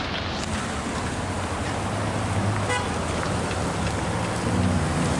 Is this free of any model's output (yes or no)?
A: yes